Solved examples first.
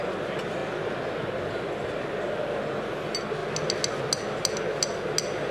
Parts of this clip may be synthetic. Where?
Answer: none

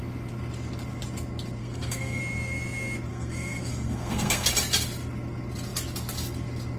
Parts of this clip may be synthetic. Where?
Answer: 1.6-2.2 (codec, SNAC); 3.1-4.5

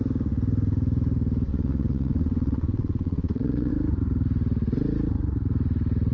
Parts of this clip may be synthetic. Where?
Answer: 1.5-3.7 (vocoder, WaveNeXt)

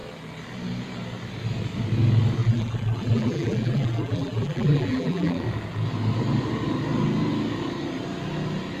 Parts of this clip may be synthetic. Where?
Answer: 2.4-5.4 (vocoder, BigVGAN v2)

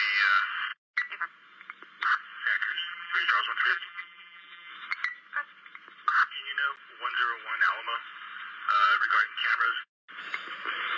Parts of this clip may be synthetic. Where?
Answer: 2.7-3.3 (vocoder, BigVGAN v2); 3.7-4.7

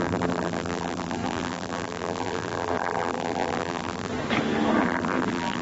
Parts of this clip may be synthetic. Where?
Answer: 0.0-4.1 (vocoder, BigVGAN v2); 4.8-5.6